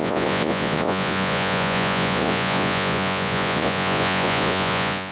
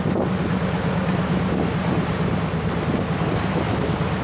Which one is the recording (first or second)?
second